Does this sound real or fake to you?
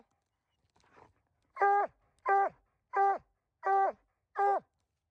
real